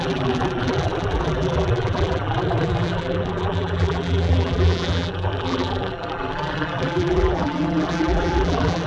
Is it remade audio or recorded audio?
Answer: remade